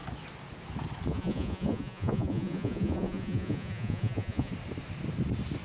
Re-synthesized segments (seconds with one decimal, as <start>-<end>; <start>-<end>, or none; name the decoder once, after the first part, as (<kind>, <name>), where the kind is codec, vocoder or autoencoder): 1.1-4.5 (vocoder, Vocos)